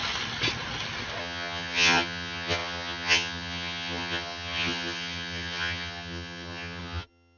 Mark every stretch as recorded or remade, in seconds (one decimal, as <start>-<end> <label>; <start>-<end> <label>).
0.0-1.2 recorded; 1.2-7.4 remade